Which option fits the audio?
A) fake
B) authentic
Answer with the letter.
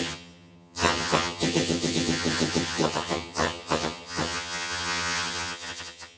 A